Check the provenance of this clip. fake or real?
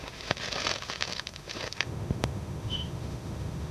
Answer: fake